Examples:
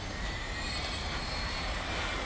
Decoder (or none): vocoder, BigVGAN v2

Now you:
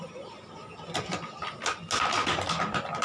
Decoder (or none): none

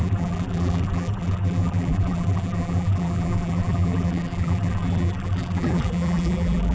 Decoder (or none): vocoder, BigVGAN v2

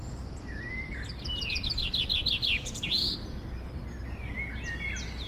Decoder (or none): none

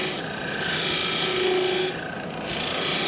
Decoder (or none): none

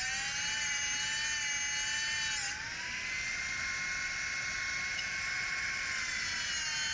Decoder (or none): none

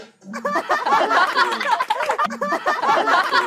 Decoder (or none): none